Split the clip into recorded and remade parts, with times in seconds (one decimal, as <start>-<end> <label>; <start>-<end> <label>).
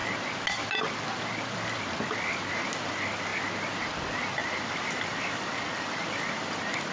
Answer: 0.0-2.5 recorded; 2.5-3.3 remade; 3.3-4.3 recorded; 4.3-6.9 remade